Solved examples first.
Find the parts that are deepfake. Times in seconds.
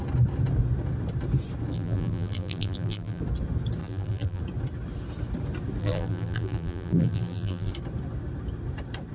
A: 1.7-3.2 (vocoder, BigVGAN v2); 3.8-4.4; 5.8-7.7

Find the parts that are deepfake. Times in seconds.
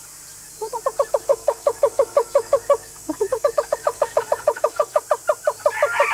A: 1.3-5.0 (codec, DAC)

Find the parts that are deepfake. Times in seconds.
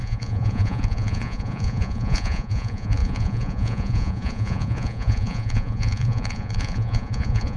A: 0.0-7.6 (vocoder, Vocos)